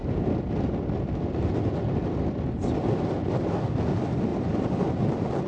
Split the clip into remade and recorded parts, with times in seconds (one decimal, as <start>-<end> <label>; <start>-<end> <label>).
0.0-4.3 recorded; 4.3-4.9 remade; 4.9-5.5 recorded

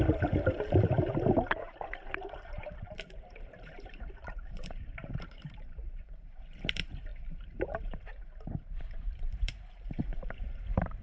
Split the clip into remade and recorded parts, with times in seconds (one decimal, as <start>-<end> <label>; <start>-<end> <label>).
0.0-11.0 remade

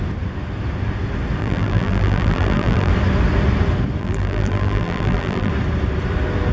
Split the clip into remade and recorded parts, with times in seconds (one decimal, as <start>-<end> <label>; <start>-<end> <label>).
0.0-1.4 recorded; 1.4-2.9 remade; 2.9-4.0 recorded; 4.0-5.5 remade; 5.5-6.5 recorded

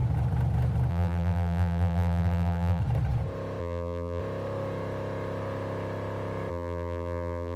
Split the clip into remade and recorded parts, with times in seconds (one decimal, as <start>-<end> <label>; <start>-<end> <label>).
0.0-0.9 recorded; 0.9-2.8 remade; 2.8-3.6 recorded; 3.6-4.2 remade; 4.2-6.5 recorded; 6.5-7.6 remade

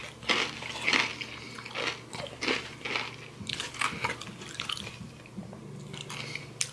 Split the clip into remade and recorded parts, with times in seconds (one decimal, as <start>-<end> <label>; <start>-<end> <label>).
0.0-6.7 recorded

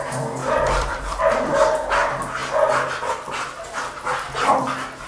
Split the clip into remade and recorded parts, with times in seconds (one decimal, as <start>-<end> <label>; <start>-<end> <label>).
0.0-0.4 recorded; 0.4-1.2 remade; 1.2-5.1 recorded

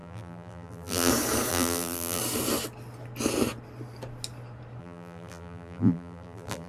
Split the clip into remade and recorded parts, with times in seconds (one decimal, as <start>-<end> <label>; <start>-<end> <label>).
0.0-1.1 remade; 1.1-1.5 recorded; 1.5-2.2 remade; 2.2-4.8 recorded; 4.8-6.7 remade

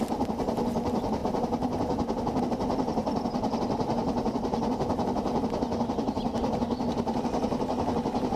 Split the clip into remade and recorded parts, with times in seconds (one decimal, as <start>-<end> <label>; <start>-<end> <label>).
0.0-4.0 remade; 4.0-8.4 recorded